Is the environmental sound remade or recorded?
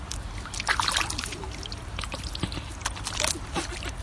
recorded